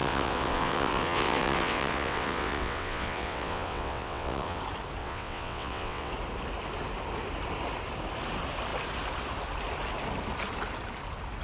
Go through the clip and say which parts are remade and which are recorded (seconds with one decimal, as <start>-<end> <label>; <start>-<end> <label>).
0.0-4.6 remade; 4.6-5.0 recorded; 5.0-6.1 remade; 6.1-11.4 recorded